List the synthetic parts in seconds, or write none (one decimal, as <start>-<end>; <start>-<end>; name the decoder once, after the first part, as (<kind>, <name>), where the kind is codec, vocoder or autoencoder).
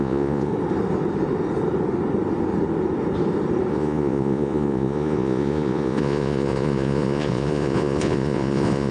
0.0-0.5 (vocoder, Vocos); 3.7-8.9